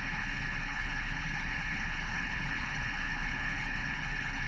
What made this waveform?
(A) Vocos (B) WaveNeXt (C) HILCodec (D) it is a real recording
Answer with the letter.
C